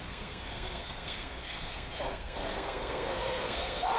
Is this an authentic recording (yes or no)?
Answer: no